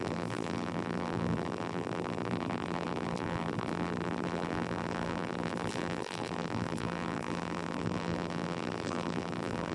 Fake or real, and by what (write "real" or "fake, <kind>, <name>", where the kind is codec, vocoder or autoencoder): fake, vocoder, BigVGAN v2